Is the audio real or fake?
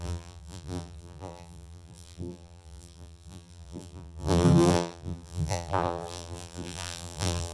fake